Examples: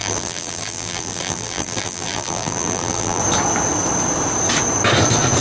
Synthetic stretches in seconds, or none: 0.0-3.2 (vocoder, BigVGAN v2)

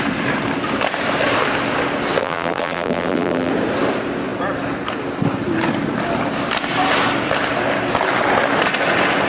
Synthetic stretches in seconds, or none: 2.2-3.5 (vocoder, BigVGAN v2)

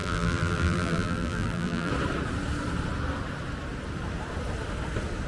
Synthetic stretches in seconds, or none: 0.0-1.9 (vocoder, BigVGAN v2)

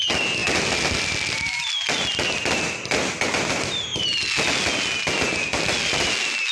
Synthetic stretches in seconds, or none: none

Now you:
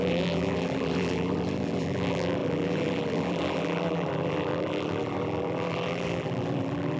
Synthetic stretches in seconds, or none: 0.0-7.0 (vocoder, BigVGAN v2)

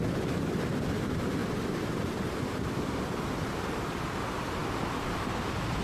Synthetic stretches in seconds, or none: 0.0-5.8 (vocoder, BigVGAN v2)

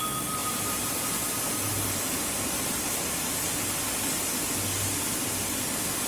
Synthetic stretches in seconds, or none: 0.4-1.9 (vocoder, BigVGAN v2)

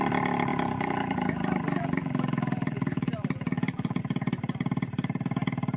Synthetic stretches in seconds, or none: 0.5-4.0 (vocoder, BigVGAN v2)